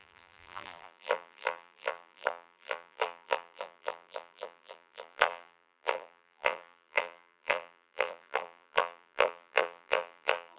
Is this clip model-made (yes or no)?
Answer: yes